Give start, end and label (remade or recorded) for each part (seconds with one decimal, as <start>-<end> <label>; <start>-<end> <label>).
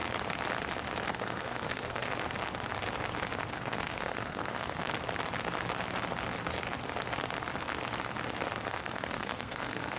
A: 0.0-1.1 recorded; 1.1-2.1 remade; 2.1-3.5 recorded; 3.5-4.9 remade; 4.9-8.7 recorded; 8.7-10.0 remade